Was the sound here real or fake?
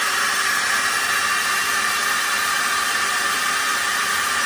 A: real